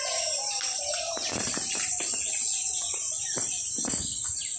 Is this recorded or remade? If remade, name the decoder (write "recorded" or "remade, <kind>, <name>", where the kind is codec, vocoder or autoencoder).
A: recorded